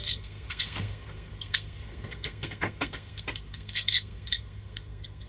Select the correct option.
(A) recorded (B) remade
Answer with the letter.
B